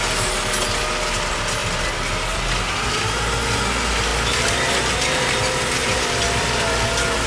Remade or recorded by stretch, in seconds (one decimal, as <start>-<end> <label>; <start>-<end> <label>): 0.0-5.8 recorded; 5.8-6.6 remade; 6.6-7.3 recorded